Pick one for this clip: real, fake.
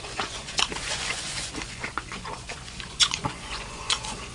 fake